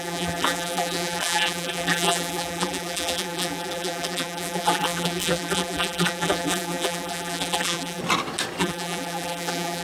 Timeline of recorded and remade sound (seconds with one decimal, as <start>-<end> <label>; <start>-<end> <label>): 0.0-8.0 remade; 8.0-8.6 recorded; 8.6-9.8 remade